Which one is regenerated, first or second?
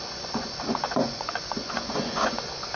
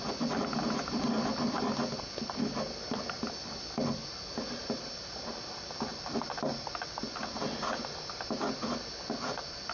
first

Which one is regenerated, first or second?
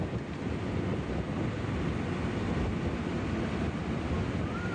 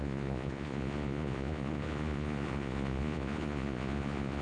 second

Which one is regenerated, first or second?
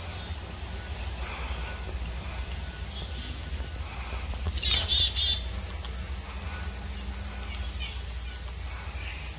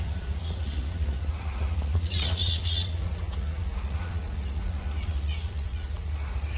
second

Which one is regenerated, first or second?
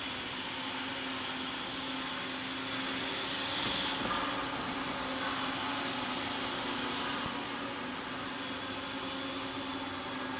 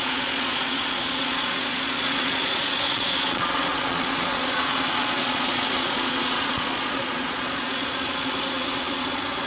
second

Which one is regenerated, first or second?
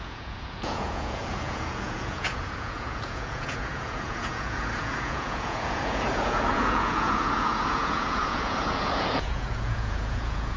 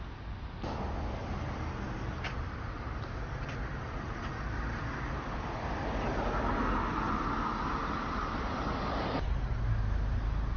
first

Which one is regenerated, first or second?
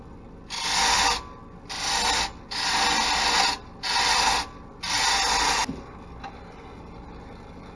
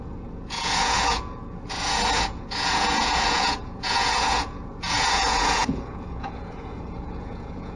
second